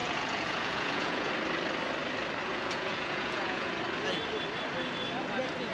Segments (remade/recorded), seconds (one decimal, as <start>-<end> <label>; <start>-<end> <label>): 0.0-1.3 remade; 1.3-2.5 recorded; 2.5-3.7 remade; 3.7-5.7 recorded